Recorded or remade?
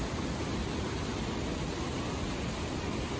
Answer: recorded